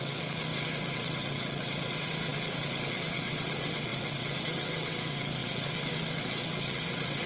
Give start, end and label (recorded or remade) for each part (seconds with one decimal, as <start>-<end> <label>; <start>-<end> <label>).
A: 0.0-7.3 remade